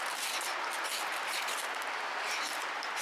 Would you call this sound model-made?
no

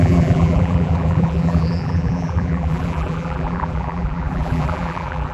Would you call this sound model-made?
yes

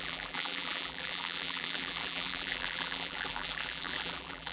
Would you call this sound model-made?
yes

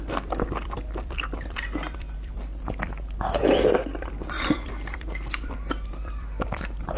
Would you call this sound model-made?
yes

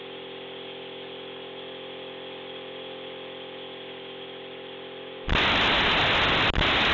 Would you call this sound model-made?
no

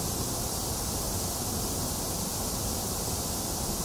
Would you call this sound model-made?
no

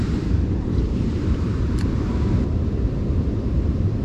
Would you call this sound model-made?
yes